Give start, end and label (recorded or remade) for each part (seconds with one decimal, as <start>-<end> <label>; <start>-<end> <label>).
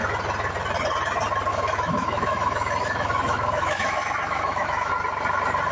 0.0-1.5 recorded; 1.5-4.9 remade; 4.9-5.7 recorded